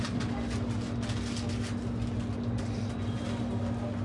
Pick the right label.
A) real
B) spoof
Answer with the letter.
A